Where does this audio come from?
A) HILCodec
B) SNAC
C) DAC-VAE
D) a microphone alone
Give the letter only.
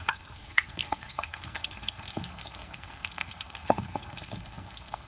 B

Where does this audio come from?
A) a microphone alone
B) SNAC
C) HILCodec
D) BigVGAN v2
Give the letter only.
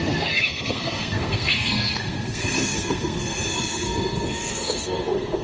B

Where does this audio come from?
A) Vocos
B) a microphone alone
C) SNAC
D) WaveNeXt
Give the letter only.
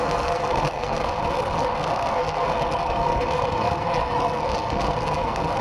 C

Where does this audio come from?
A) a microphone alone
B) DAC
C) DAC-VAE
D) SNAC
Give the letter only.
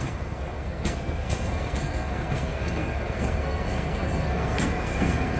D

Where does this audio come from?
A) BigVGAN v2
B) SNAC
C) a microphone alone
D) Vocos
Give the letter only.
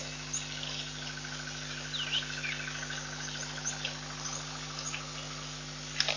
C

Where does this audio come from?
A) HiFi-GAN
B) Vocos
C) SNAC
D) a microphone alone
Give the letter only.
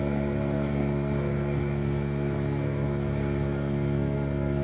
C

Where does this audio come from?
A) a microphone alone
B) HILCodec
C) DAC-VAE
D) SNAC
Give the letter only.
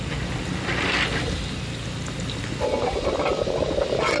A